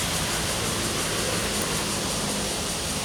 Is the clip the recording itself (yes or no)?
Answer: yes